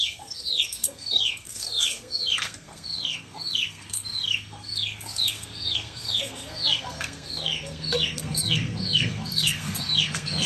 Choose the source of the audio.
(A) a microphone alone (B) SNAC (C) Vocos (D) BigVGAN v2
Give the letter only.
B